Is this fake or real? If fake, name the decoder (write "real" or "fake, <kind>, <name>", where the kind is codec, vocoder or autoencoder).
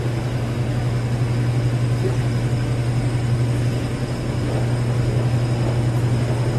real